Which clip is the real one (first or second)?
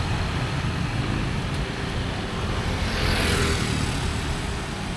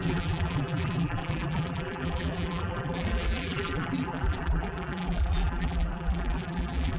first